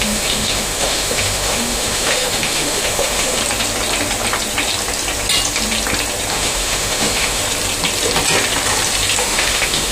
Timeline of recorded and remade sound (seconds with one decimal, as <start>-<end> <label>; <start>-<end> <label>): 0.0-3.4 remade; 3.4-6.3 recorded; 6.3-7.4 remade; 7.4-9.2 recorded; 9.2-9.9 remade